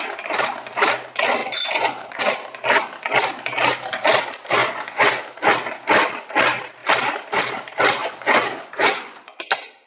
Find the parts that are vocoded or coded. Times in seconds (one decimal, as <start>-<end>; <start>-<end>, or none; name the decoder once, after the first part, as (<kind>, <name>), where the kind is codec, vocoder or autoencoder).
1.4-2.2 (vocoder, Vocos); 4.6-5.2; 8.0-9.4